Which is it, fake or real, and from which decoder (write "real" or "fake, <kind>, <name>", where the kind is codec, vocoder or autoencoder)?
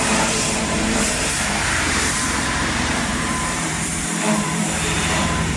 fake, vocoder, BigVGAN v2